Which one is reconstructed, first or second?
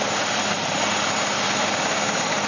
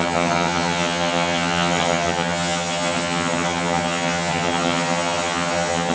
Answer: second